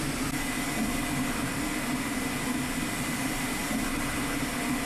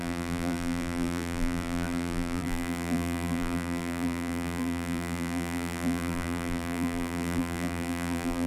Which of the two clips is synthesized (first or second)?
second